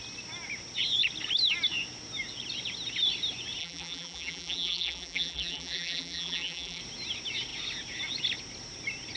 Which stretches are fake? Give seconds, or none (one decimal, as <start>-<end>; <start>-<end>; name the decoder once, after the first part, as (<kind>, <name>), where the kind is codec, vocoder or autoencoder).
3.6-6.8 (vocoder, BigVGAN v2)